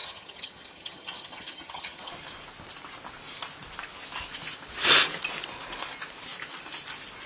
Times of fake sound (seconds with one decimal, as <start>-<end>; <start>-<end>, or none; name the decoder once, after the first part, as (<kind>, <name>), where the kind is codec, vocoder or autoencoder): 0.0-2.1 (vocoder, HiFi-GAN)